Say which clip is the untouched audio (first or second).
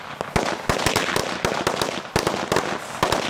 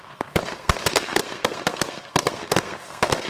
first